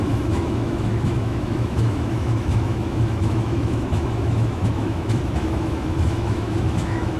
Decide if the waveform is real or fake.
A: fake